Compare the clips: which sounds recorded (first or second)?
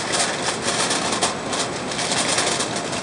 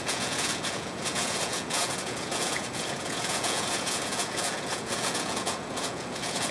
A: first